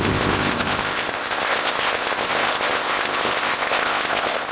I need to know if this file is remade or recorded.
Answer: remade